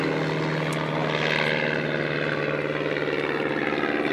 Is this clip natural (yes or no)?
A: yes